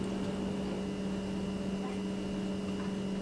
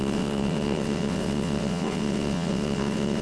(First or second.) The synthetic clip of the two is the second